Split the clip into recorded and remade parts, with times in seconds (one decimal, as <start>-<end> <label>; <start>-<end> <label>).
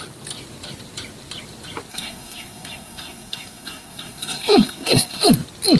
0.0-1.9 recorded; 1.9-5.3 remade; 5.3-5.8 recorded